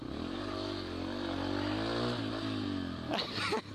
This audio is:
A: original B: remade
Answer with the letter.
A